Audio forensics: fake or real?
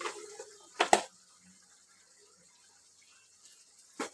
real